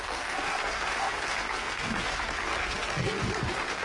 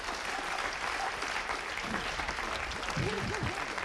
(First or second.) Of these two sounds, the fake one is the first